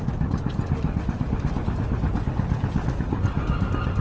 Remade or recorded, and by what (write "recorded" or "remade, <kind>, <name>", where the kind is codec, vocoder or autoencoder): recorded